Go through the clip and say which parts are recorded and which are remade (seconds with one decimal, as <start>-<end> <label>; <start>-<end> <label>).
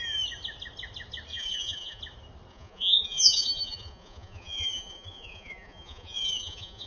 0.0-1.3 recorded; 1.3-2.0 remade; 2.0-2.5 recorded; 2.5-6.9 remade